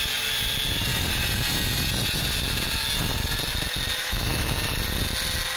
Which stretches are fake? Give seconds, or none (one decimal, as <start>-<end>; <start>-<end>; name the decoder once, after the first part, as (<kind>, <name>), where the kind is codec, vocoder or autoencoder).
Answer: 4.0-4.6 (autoencoder, DAC-VAE)